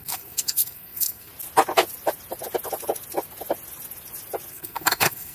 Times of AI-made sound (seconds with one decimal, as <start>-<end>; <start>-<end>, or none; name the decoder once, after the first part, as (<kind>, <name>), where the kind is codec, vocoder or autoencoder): 0.0-1.3 (codec, SNAC); 4.5-5.3